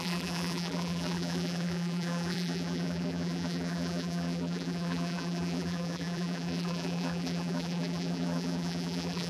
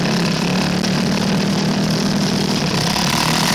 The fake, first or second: first